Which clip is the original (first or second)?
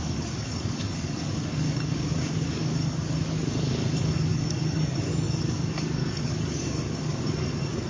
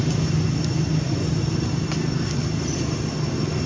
second